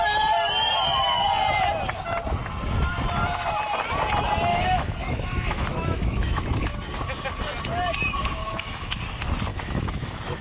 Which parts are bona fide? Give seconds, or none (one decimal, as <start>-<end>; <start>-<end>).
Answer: 0.0-4.5; 6.4-8.4; 9.0-9.5